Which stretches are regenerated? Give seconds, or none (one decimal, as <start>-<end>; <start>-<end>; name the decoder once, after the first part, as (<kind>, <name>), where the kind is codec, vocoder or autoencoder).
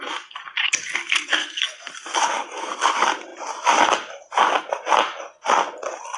1.4-1.9 (codec, SNAC)